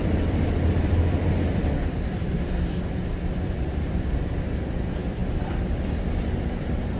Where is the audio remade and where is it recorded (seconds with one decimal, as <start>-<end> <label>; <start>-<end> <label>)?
0.0-5.2 remade; 5.2-6.0 recorded; 6.0-7.0 remade